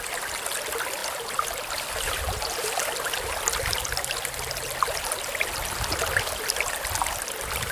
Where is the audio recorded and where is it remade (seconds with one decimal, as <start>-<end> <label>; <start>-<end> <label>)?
0.0-7.7 recorded